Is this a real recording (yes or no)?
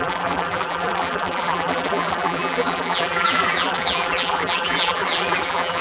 no